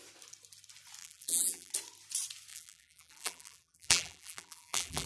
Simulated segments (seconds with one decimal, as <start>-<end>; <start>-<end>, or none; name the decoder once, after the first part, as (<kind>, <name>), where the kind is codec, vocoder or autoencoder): 1.0-1.7 (vocoder, BigVGAN v2); 2.5-5.1